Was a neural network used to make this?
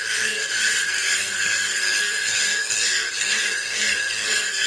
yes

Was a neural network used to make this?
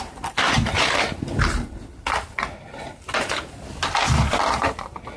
no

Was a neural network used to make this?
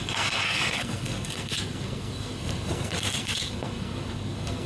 yes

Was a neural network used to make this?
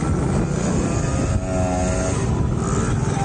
no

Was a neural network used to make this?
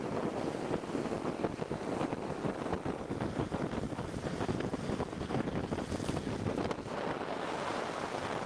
no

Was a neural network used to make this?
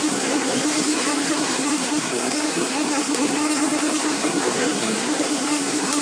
yes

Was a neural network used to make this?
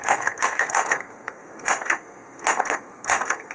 yes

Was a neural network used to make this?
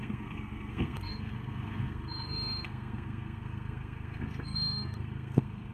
yes